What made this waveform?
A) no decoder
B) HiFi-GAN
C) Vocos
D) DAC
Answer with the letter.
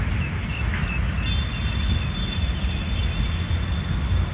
A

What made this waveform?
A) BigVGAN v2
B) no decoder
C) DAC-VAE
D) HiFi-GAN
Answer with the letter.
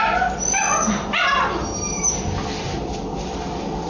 B